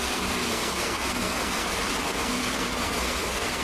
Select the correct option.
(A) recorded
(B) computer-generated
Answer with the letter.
B